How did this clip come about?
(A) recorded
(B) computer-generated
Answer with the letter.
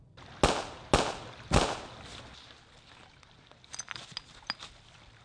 A